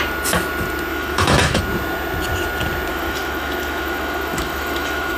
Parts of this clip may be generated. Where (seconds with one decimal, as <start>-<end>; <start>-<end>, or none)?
0.9-1.6; 2.9-5.2